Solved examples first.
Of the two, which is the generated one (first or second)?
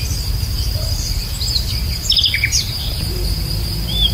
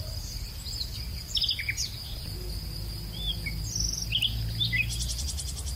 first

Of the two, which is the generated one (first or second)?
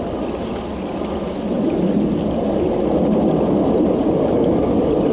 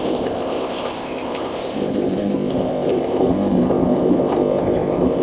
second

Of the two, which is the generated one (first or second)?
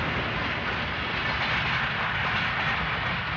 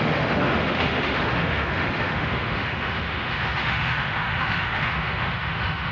second